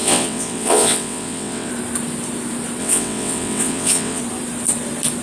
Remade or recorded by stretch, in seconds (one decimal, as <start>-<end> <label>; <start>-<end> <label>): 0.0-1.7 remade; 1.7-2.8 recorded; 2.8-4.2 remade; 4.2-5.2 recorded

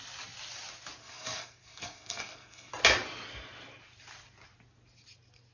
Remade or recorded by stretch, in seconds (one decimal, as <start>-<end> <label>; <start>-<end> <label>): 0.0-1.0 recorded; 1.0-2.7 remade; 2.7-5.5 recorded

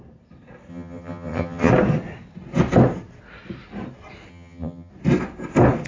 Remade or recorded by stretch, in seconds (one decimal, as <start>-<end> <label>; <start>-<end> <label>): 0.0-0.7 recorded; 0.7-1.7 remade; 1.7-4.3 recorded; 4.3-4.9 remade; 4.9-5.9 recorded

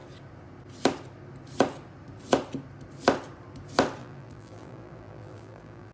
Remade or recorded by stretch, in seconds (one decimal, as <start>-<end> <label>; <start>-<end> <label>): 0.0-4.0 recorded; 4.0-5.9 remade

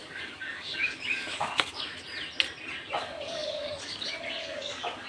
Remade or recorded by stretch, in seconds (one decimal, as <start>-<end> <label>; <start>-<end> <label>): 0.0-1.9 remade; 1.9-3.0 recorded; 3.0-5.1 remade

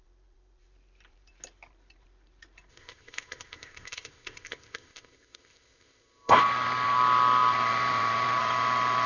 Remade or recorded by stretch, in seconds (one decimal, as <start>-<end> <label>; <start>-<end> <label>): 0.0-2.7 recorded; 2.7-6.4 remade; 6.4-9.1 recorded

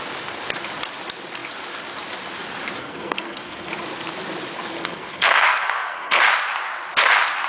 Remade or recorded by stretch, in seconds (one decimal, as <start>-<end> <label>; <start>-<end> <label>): 0.0-2.8 recorded; 2.8-3.7 remade; 3.7-4.8 recorded; 4.8-6.2 remade; 6.2-7.5 recorded

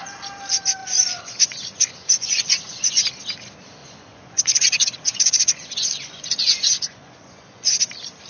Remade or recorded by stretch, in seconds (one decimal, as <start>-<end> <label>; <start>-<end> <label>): 0.0-0.8 recorded; 0.8-3.1 remade; 3.1-3.8 recorded; 3.8-7.8 remade; 7.8-8.3 recorded